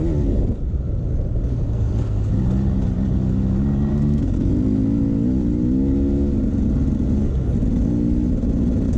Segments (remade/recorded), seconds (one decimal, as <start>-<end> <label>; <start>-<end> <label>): 0.0-1.5 recorded; 1.5-2.3 remade; 2.3-3.9 recorded; 3.9-4.5 remade; 4.5-9.0 recorded